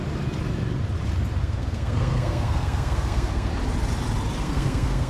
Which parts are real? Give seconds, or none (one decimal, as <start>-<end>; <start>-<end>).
0.0-1.4; 3.5-4.4